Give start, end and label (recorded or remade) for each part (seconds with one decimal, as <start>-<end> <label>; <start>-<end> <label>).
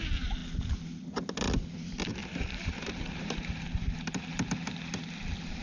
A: 0.0-2.2 recorded; 2.2-4.3 remade; 4.3-5.6 recorded